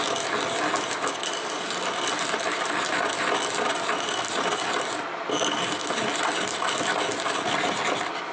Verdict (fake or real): real